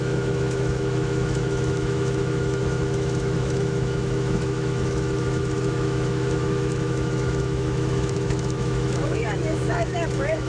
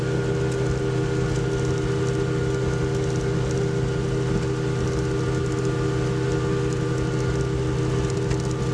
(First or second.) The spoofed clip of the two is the first